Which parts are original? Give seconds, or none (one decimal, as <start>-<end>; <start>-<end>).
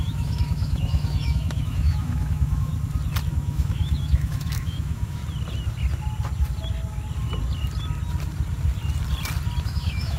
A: 2.7-3.3; 5.2-9.6